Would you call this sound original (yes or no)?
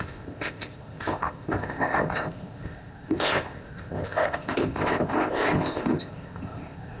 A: no